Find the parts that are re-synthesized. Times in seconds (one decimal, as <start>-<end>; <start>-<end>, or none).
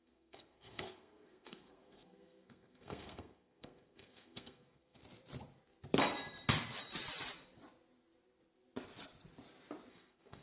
0.0-5.0; 9.9-10.4